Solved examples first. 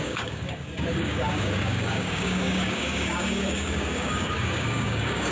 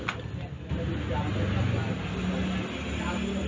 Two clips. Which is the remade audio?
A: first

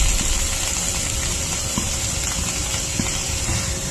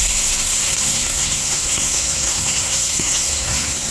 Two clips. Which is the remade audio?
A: second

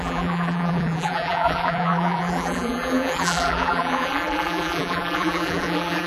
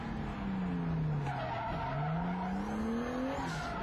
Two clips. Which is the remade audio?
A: first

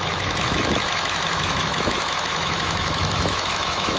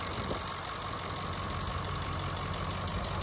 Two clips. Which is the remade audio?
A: first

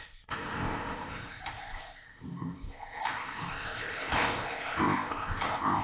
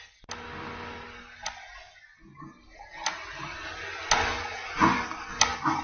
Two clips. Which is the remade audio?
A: first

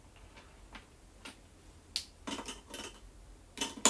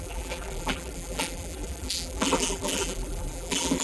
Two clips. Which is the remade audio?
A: second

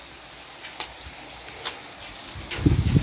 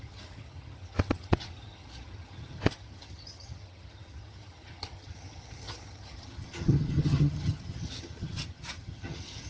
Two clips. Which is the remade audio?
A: second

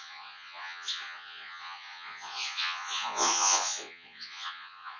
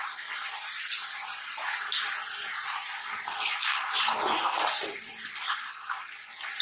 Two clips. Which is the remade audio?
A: first